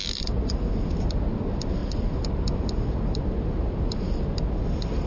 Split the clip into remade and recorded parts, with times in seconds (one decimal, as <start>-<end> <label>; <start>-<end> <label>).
0.0-5.1 recorded